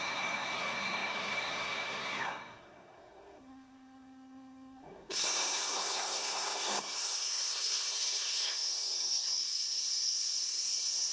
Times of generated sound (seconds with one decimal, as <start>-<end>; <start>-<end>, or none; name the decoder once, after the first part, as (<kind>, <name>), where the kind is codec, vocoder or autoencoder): 0.0-11.1 (codec, SNAC)